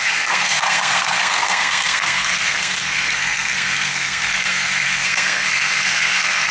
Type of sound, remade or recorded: remade